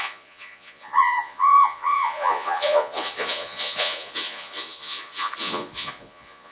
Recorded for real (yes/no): no